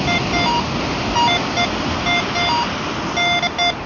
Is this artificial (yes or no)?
no